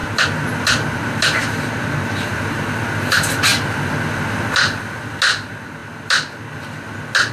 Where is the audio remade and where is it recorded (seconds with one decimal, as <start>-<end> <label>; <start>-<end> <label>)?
0.0-7.3 recorded